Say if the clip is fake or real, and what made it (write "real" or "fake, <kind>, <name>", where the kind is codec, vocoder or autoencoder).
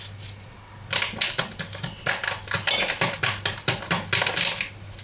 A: real